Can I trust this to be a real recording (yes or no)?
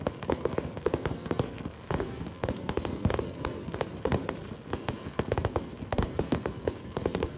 no